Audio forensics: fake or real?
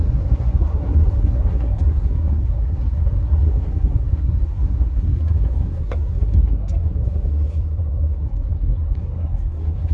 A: fake